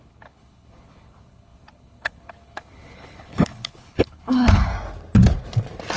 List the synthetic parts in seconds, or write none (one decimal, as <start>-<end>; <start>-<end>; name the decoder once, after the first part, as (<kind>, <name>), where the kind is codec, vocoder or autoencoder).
0.0-4.7 (codec, HILCodec)